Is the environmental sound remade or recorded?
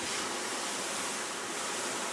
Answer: recorded